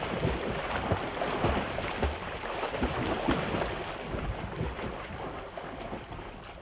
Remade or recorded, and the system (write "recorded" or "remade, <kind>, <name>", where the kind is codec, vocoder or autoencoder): recorded